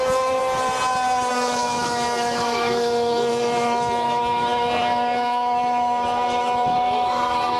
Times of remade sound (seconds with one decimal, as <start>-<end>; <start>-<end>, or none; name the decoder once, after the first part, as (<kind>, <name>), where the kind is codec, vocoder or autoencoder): 0.0-0.4 (autoencoder, DAC-VAE); 1.3-7.6